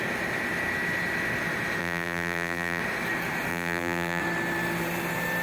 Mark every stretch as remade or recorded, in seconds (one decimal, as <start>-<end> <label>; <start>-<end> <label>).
0.0-1.8 recorded; 1.8-2.8 remade; 2.8-3.5 recorded; 3.5-4.2 remade; 4.2-5.4 recorded